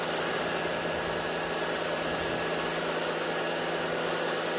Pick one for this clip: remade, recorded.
recorded